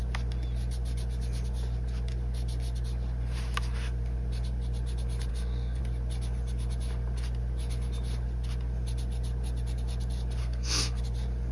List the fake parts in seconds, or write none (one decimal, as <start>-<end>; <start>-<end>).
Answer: 5.3-5.8; 10.4-11.0